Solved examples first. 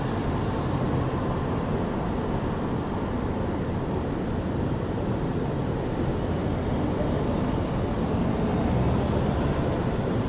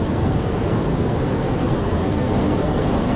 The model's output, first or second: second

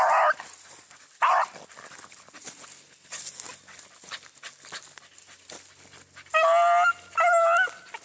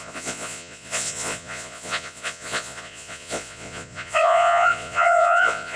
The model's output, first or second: second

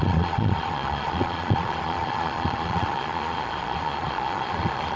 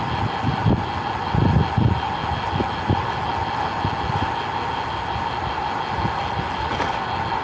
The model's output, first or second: first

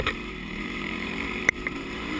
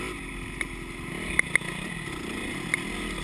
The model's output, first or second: first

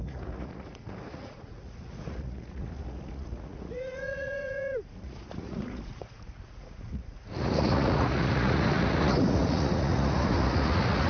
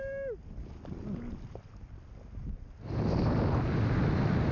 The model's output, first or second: first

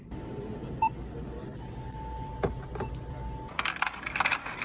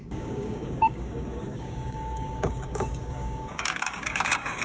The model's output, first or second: second